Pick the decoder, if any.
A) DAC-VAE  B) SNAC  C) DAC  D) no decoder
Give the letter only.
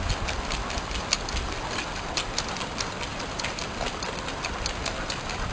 D